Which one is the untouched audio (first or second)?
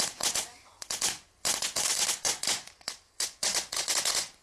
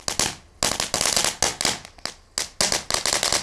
second